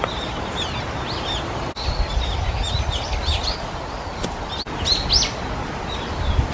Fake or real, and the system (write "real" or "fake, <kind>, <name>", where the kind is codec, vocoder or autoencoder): real